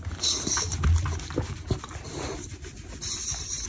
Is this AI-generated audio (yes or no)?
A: no